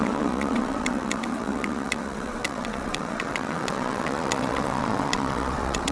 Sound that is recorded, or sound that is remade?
remade